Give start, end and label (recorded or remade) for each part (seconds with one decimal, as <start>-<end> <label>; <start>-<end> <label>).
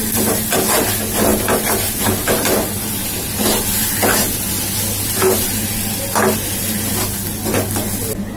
0.0-8.4 recorded